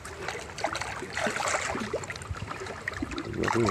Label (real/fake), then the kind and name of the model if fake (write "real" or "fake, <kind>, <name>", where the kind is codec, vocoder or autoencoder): real